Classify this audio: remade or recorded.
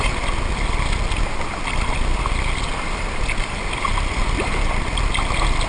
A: recorded